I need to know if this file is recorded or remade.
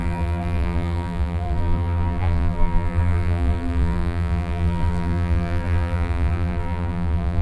remade